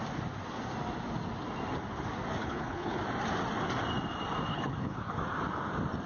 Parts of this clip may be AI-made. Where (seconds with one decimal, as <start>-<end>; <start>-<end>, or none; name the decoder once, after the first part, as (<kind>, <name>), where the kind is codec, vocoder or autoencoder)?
2.4-3.0 (codec, HILCodec); 4.5-5.2